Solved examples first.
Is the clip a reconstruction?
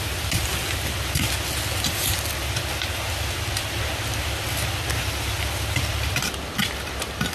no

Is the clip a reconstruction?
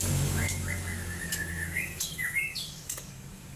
yes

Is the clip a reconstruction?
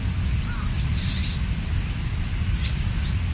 no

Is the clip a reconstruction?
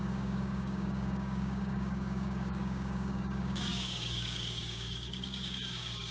yes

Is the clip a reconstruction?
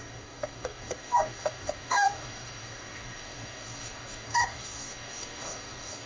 yes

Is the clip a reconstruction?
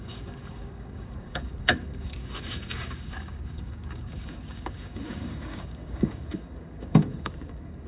yes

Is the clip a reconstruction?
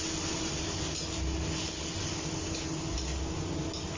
no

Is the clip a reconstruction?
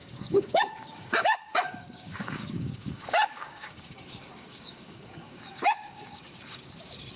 yes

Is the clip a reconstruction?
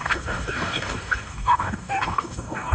yes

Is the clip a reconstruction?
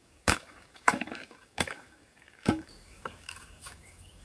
yes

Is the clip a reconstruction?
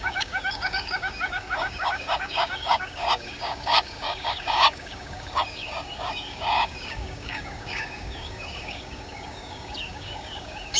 yes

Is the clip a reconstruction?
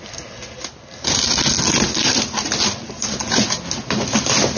no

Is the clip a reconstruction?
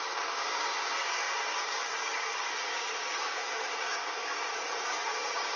yes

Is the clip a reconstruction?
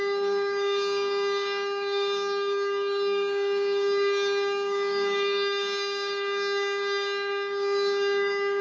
yes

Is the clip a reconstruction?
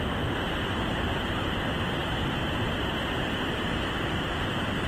no